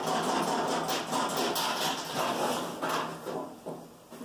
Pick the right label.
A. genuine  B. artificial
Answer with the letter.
A